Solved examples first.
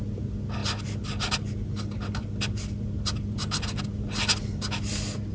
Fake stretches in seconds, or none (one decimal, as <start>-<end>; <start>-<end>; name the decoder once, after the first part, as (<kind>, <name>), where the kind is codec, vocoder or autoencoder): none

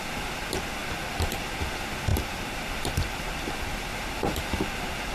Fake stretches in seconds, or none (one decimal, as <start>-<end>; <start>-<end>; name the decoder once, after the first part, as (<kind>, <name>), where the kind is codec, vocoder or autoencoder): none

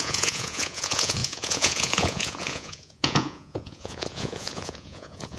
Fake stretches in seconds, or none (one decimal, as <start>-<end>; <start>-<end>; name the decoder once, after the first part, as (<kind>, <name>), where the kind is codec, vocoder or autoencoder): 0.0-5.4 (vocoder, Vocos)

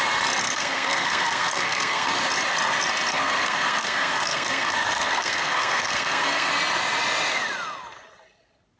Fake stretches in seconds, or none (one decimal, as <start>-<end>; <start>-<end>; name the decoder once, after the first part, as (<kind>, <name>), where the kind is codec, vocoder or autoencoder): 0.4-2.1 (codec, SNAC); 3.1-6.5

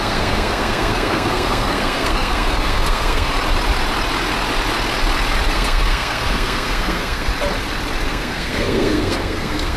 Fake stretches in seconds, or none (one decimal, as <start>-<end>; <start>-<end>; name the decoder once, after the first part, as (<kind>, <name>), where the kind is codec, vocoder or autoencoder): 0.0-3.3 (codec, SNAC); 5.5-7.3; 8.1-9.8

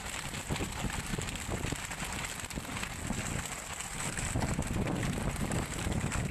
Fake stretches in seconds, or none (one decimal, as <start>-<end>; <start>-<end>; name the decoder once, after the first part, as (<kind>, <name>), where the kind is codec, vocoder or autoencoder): none

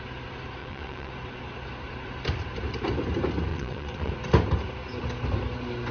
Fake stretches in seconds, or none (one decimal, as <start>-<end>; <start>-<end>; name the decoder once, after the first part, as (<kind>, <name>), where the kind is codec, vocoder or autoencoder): 0.6-1.1 (vocoder, WaveNeXt); 3.5-4.1

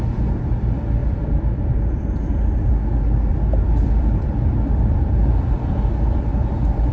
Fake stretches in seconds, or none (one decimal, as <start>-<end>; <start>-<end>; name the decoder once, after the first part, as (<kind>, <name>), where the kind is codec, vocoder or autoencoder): 1.0-2.7 (vocoder, BigVGAN v2); 3.3-6.9